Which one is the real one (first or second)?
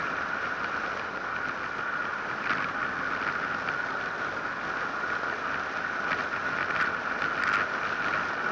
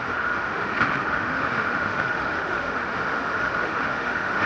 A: first